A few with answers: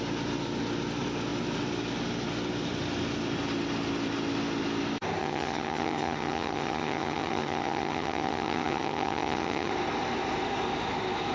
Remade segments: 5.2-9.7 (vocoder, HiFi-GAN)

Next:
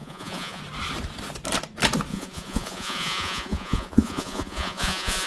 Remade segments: 0.0-0.6 (vocoder, Vocos); 2.1-5.3

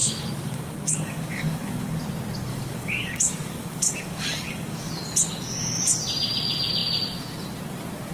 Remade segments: 0.0-2.0 (codec, DAC); 2.5-4.9